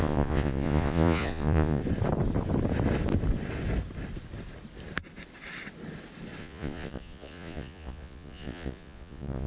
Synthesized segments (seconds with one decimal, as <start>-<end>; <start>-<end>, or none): 0.0-1.8; 6.4-9.5